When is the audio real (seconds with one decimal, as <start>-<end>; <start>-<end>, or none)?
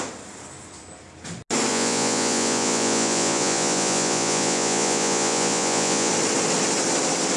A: 0.0-1.7; 6.1-7.4